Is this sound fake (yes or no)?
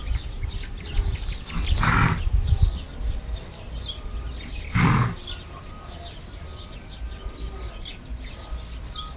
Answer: no